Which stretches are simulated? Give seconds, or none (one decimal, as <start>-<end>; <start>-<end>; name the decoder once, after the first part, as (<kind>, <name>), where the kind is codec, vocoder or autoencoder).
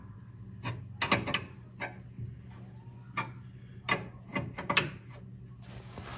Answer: none